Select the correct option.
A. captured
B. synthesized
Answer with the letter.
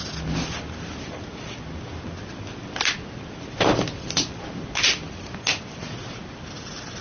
A